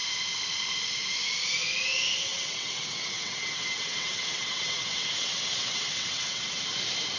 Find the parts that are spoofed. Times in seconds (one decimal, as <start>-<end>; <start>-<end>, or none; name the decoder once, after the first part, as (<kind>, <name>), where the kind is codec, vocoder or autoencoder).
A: 2.3-6.6 (vocoder, WaveNeXt)